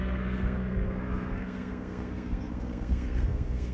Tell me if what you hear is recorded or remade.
remade